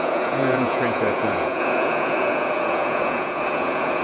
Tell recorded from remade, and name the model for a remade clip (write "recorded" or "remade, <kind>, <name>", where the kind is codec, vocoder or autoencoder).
remade, vocoder, Vocos